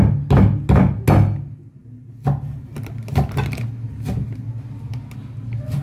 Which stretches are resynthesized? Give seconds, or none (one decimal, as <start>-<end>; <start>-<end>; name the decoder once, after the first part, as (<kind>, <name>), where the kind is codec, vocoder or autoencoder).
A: none